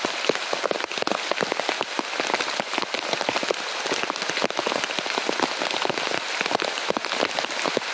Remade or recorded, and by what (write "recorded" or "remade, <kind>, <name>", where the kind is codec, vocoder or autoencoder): recorded